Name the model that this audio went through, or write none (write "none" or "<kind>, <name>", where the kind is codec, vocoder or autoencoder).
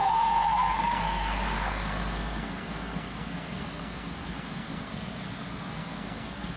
codec, SNAC